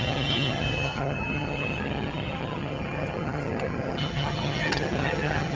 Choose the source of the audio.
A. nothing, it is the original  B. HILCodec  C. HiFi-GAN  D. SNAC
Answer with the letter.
C